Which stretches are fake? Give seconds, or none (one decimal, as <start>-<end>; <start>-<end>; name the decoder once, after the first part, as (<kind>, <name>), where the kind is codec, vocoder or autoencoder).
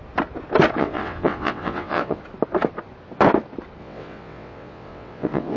0.8-2.2 (vocoder, WaveNeXt); 3.8-5.6